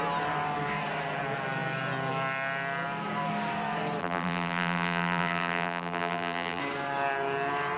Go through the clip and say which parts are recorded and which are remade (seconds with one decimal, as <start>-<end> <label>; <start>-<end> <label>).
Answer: 0.0-4.0 recorded; 4.0-6.6 remade; 6.6-7.8 recorded